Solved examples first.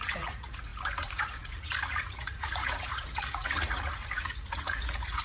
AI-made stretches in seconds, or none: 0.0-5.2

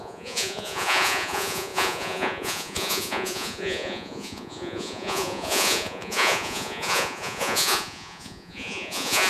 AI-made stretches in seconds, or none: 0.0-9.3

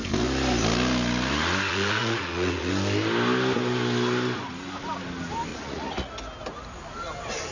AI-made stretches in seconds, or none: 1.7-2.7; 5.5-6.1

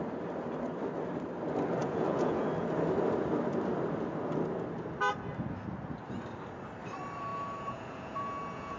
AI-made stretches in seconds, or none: 1.8-2.5; 7.3-8.8